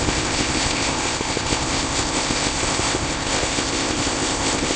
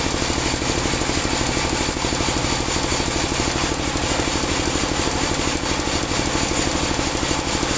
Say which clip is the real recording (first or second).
second